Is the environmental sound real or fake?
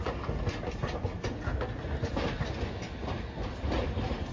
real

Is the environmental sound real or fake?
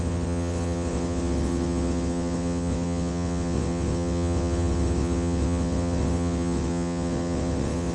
fake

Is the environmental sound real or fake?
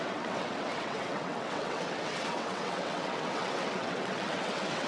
fake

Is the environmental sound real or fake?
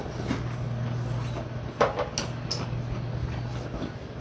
real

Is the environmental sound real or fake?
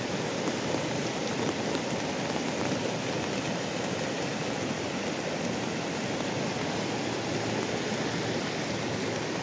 real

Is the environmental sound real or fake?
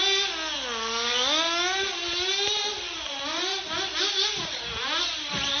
real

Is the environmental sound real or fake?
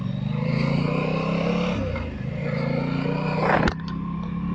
real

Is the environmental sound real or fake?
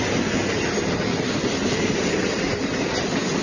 real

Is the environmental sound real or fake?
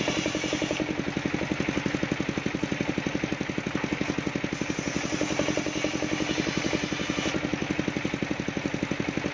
real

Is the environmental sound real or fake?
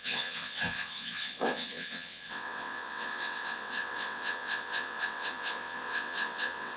fake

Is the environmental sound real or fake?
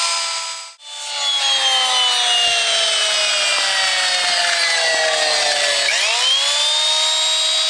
real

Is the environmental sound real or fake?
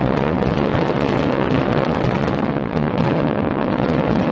fake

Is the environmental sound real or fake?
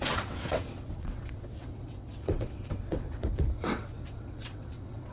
fake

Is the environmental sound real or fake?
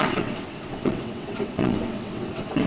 fake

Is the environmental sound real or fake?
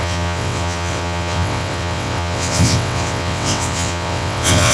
fake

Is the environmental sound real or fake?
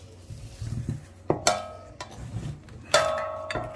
real